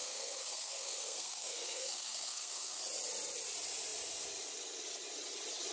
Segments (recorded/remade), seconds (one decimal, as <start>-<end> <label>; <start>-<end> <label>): 0.0-2.8 remade; 2.8-5.7 recorded